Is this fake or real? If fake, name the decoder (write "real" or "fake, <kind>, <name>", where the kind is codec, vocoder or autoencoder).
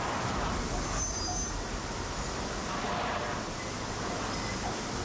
real